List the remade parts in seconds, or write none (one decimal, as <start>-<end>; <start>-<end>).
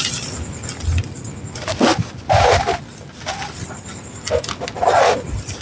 none